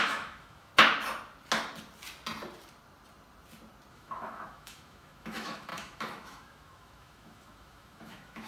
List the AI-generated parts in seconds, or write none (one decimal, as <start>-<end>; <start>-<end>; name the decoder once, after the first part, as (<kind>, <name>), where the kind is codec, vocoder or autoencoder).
0.0-0.7 (autoencoder, DAC-VAE); 3.9-8.5